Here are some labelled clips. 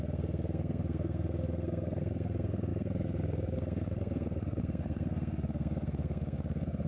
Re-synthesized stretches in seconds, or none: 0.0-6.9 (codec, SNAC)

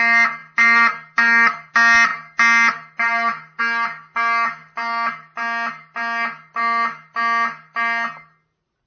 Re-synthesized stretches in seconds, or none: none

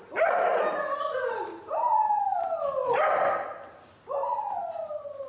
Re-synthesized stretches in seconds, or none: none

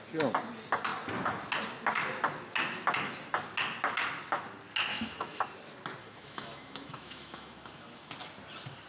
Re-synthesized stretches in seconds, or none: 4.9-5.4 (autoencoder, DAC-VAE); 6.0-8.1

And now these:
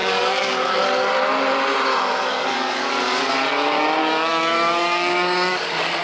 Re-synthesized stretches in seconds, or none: 0.0-1.1 (codec, DAC); 2.3-3.3; 4.0-6.0

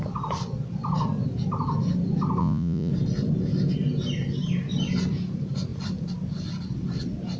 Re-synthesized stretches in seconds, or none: 2.4-2.9 (vocoder, Vocos)

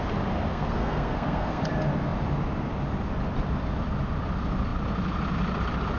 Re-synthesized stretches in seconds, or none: 0.5-1.6 (codec, SNAC)